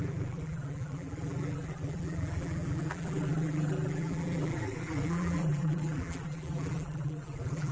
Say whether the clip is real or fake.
fake